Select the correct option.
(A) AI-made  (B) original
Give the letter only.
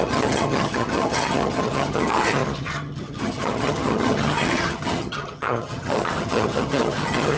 A